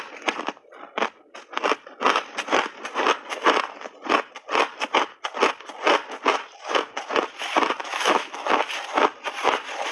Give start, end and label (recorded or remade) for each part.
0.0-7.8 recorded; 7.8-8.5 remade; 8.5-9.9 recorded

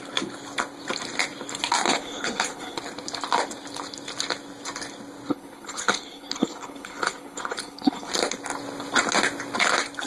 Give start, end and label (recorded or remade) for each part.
0.0-1.8 recorded; 1.8-2.8 remade; 2.8-5.3 recorded; 5.3-8.1 remade; 8.1-10.1 recorded

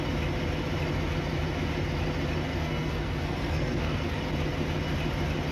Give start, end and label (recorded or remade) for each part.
0.0-2.5 recorded; 2.5-4.2 remade; 4.2-5.5 recorded

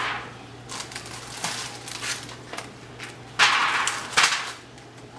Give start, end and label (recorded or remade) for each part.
0.0-5.2 recorded